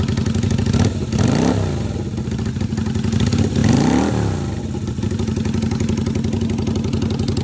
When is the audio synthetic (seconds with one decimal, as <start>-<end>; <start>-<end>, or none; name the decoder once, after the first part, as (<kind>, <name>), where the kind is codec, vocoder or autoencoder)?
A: none